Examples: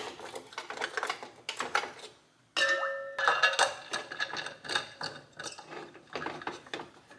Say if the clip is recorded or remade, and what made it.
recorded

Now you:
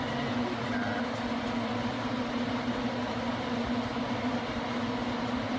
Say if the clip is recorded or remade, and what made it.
recorded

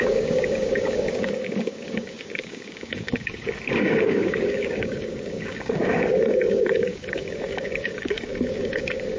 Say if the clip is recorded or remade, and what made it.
remade, codec, DAC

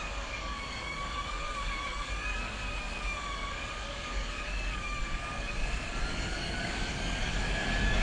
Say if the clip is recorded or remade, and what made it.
remade, codec, DAC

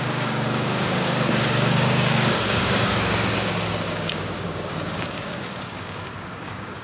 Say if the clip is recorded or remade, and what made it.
remade, codec, DAC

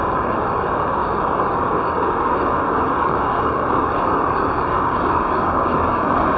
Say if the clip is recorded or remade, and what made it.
remade, codec, DAC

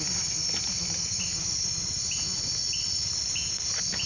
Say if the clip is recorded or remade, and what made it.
recorded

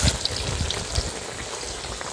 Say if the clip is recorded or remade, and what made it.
recorded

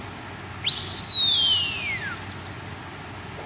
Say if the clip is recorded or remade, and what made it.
recorded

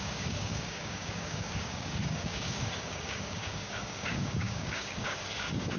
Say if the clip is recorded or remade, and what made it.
remade, codec, DAC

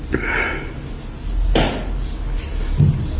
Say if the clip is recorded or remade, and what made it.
recorded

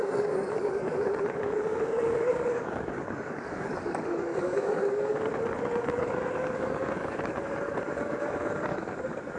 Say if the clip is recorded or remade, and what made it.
remade, codec, DAC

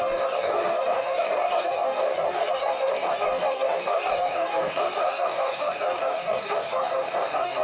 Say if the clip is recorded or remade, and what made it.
remade, codec, DAC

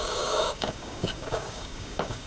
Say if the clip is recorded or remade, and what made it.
remade, codec, DAC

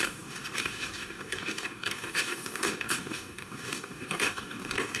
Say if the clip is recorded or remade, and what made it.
remade, codec, DAC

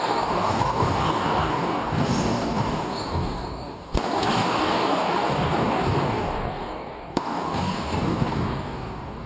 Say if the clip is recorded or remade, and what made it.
remade, codec, DAC